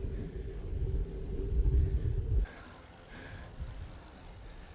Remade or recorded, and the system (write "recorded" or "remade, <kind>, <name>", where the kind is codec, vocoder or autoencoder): recorded